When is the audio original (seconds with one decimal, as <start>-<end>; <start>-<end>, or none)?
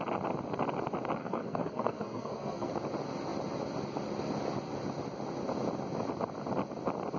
0.0-1.2; 2.7-7.2